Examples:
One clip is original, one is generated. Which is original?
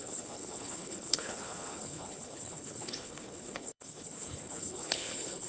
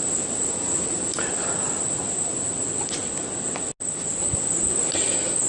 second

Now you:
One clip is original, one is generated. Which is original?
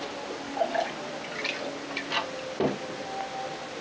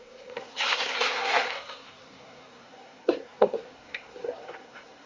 first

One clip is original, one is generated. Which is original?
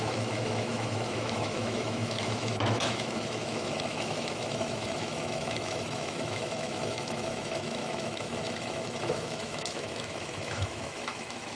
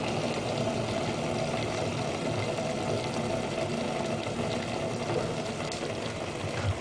second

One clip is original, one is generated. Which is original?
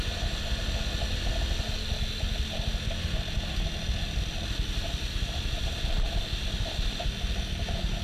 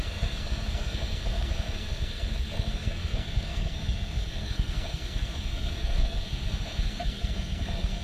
first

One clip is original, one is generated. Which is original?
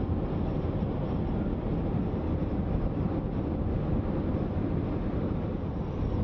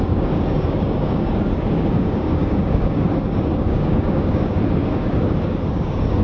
first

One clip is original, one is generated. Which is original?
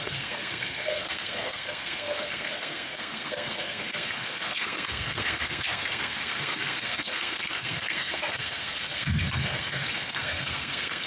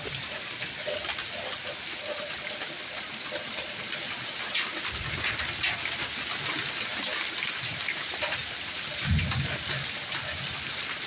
second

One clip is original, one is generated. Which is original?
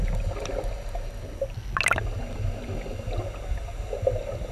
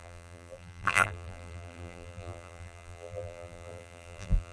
first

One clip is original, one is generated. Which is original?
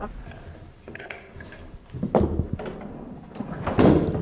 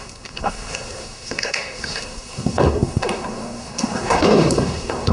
first